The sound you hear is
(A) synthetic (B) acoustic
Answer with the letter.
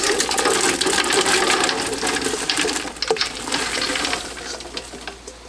B